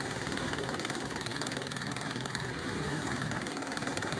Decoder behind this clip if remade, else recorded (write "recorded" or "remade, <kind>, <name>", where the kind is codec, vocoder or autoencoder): remade, codec, SNAC